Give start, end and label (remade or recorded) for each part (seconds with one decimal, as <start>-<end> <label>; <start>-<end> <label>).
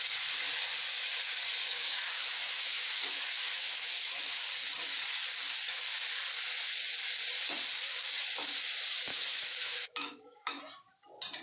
0.0-1.7 recorded; 1.7-4.4 remade; 4.4-9.1 recorded; 9.1-10.6 remade; 10.6-11.4 recorded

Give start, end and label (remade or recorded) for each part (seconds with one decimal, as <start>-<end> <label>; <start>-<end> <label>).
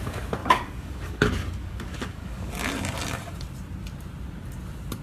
0.0-0.4 recorded; 0.4-2.5 remade; 2.5-5.0 recorded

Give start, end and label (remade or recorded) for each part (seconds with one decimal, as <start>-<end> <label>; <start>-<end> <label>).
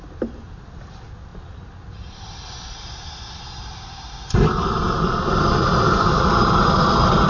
0.0-7.3 recorded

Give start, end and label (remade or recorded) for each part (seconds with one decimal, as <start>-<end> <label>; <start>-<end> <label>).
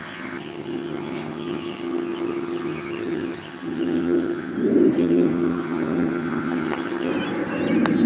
0.0-4.5 remade; 4.5-5.0 recorded; 5.0-7.1 remade; 7.1-8.1 recorded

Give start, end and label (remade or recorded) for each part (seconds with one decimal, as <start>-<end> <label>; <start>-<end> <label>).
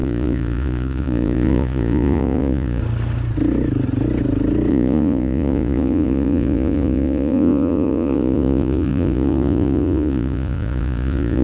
0.0-2.8 remade; 2.8-4.7 recorded; 4.7-11.4 remade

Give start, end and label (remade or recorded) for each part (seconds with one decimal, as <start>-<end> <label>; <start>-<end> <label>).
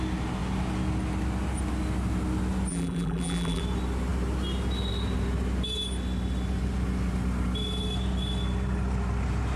0.0-2.7 recorded; 2.7-3.6 remade; 3.6-9.6 recorded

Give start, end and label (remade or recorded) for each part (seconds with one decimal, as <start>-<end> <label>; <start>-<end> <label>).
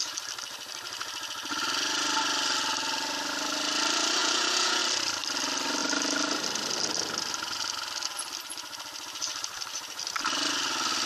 0.0-4.2 recorded; 4.2-4.8 remade; 4.8-11.1 recorded